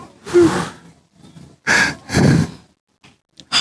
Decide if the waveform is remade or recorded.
recorded